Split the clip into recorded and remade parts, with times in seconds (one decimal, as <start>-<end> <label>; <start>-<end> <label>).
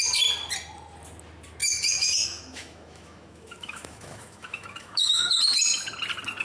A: 0.0-1.6 recorded; 1.6-5.4 remade; 5.4-6.4 recorded